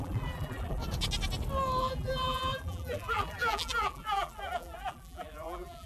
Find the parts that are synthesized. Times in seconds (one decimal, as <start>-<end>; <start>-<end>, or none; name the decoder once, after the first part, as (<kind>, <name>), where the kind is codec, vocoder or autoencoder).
0.0-0.8 (vocoder, BigVGAN v2); 1.8-5.9